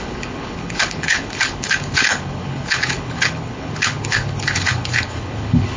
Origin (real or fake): fake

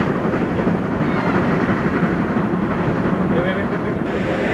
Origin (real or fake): fake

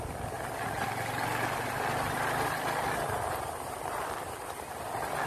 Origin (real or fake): real